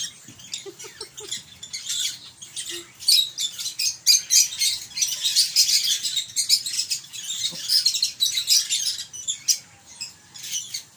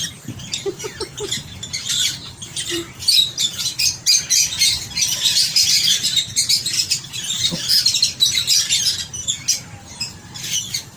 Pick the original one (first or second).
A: first